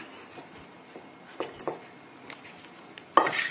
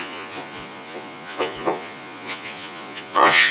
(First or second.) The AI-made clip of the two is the second